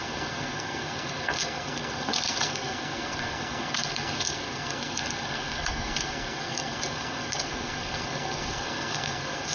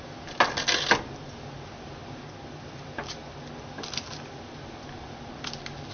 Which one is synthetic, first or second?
first